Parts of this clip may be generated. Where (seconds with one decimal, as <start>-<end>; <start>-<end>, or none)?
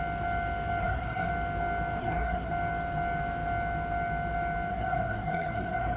0.8-1.3; 2.0-2.5; 4.7-6.0